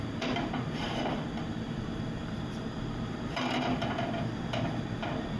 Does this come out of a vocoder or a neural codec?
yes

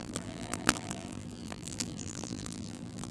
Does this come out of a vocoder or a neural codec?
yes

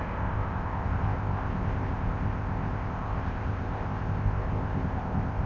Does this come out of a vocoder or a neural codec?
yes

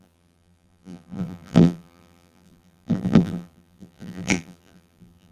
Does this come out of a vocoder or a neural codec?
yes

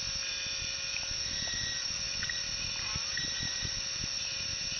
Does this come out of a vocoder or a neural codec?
yes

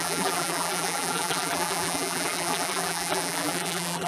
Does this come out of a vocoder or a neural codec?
yes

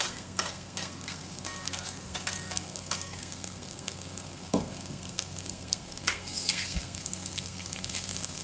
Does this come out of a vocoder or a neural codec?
yes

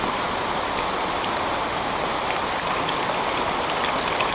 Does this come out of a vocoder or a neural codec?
no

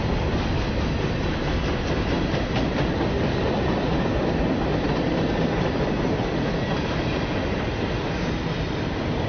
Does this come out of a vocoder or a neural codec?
no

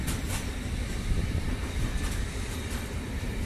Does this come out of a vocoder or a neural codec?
yes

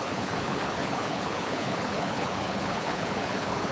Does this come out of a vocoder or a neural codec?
yes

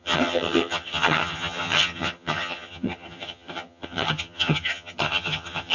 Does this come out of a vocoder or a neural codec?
yes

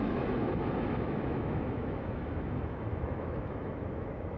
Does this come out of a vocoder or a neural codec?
yes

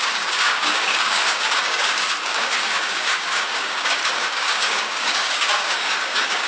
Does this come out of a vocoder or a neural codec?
yes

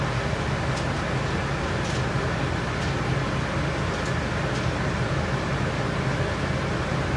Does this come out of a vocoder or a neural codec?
no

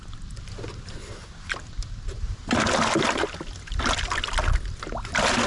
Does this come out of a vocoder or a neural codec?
no